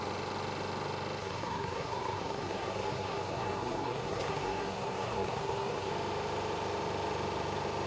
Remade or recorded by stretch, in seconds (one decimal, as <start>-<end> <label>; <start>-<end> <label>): 0.0-1.2 recorded; 1.2-5.9 remade; 5.9-7.9 recorded